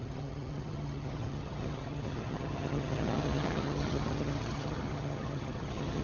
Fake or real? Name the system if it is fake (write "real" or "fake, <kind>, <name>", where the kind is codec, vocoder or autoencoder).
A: fake, vocoder, HiFi-GAN